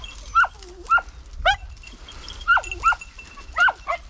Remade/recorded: recorded